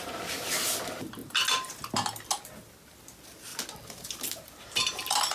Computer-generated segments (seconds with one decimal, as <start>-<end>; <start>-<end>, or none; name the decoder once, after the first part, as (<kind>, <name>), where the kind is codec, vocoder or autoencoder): 3.5-4.0 (vocoder, BigVGAN v2)